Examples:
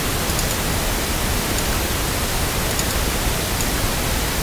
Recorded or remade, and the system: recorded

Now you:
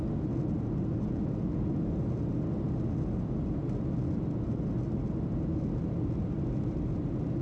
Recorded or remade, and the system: recorded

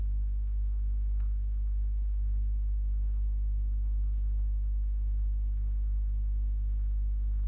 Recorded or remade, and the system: remade, codec, SNAC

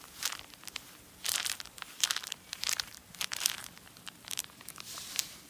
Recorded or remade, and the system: remade, vocoder, BigVGAN v2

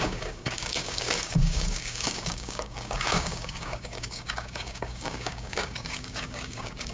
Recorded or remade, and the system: remade, codec, DAC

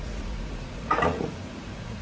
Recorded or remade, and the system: remade, vocoder, Vocos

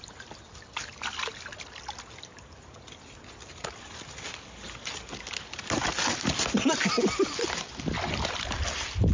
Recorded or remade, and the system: recorded